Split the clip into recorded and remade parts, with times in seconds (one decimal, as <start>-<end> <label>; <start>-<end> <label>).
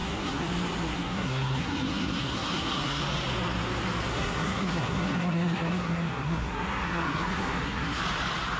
0.0-0.5 remade; 0.5-0.9 recorded; 0.9-3.0 remade; 3.0-4.1 recorded; 4.1-8.0 remade; 8.0-8.6 recorded